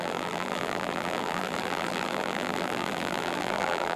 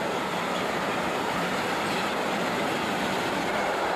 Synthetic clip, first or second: first